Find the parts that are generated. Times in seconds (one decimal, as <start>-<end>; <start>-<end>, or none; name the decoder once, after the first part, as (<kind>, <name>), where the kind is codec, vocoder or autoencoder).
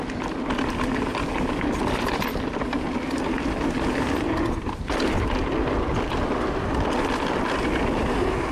none